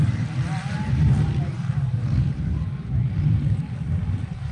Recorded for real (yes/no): no